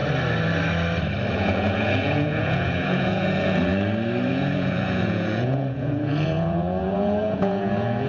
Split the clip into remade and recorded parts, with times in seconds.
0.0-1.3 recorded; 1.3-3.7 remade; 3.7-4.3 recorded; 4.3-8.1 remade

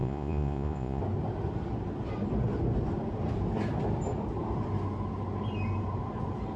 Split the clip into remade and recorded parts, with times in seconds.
0.0-1.0 remade; 1.0-6.6 recorded

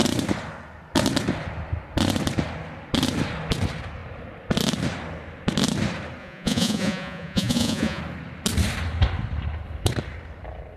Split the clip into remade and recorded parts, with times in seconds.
0.0-6.2 recorded; 6.2-8.0 remade; 8.0-10.8 recorded

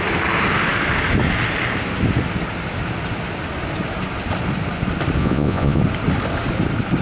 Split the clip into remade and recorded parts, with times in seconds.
0.0-5.2 recorded; 5.2-5.8 remade; 5.8-7.0 recorded

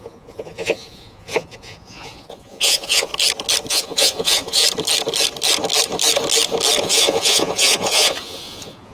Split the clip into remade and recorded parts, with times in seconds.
0.0-3.1 remade; 3.1-3.7 recorded; 3.7-4.6 remade; 4.6-6.8 recorded; 6.8-8.9 remade

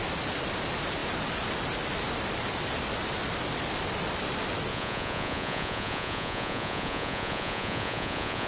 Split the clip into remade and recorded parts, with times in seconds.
0.0-4.7 recorded; 4.7-8.5 remade

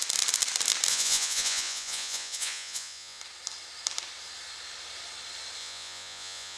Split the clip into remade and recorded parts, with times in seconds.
0.0-0.9 recorded; 0.9-3.2 remade; 3.2-5.6 recorded; 5.6-6.6 remade